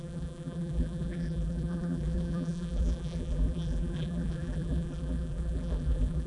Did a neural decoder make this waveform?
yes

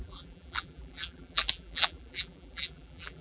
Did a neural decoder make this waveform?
yes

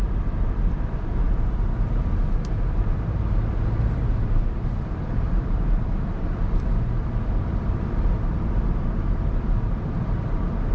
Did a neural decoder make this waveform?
yes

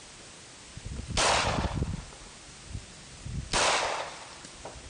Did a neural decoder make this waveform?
no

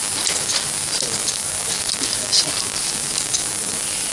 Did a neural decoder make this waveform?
no